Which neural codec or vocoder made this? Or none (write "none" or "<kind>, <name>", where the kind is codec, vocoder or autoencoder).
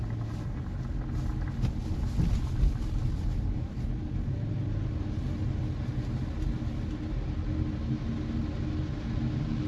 none